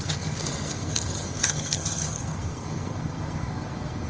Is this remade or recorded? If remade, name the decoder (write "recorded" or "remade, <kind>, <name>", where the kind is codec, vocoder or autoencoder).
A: remade, codec, SNAC